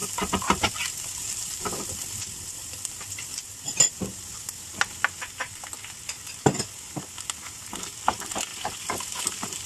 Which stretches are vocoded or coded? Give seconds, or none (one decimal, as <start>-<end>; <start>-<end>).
0.0-3.9; 8.5-9.2